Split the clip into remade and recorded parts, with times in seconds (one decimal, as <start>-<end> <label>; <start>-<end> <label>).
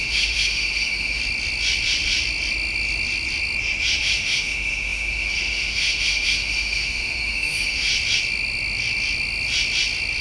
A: 0.0-1.2 remade; 1.2-4.0 recorded; 4.0-7.9 remade; 7.9-10.2 recorded